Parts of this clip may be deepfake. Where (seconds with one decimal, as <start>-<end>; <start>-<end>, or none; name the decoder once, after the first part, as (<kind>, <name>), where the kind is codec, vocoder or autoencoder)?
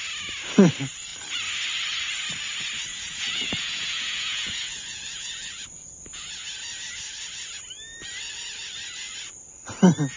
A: 2.9-6.4 (vocoder, Vocos)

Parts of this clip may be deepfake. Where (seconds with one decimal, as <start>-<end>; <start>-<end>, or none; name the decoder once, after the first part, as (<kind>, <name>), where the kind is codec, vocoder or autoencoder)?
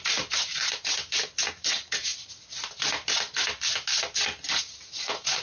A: 0.0-0.6 (vocoder, Vocos); 1.5-2.1; 4.6-5.4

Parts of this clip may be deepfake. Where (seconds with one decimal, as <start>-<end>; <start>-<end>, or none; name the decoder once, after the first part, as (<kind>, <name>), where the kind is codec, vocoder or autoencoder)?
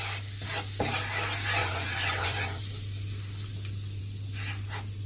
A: 1.6-2.6 (vocoder, Vocos)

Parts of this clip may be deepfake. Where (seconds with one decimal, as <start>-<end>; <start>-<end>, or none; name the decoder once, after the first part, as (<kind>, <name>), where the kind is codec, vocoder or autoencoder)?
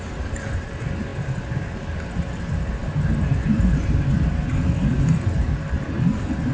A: none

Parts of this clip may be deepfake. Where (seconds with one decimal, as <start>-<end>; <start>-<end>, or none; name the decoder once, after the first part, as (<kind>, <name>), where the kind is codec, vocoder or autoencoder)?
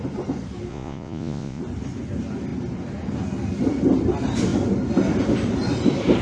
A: 0.7-1.6 (vocoder, Vocos)